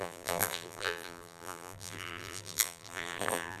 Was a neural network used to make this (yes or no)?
yes